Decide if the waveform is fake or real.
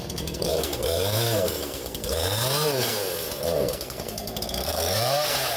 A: fake